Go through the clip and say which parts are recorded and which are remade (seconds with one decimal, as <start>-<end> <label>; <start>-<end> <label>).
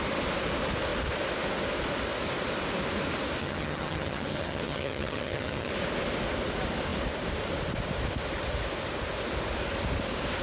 0.0-3.4 recorded; 3.4-5.7 remade; 5.7-10.4 recorded